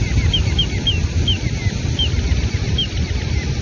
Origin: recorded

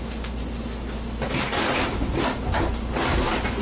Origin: recorded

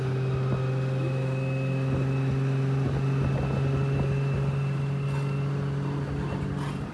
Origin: recorded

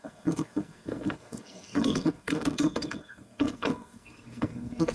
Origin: remade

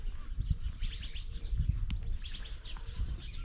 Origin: recorded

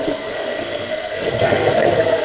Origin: remade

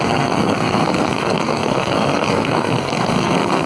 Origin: remade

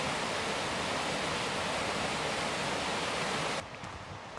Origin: recorded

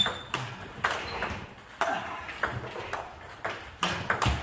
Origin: recorded